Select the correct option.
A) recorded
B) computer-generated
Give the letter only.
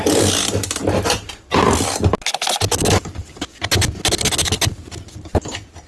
A